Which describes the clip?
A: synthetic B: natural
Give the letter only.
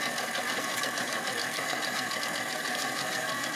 A